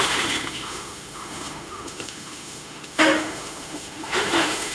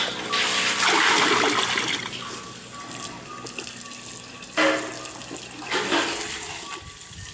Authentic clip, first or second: second